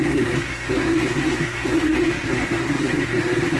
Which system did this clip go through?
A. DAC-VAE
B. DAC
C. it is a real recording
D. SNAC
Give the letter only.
D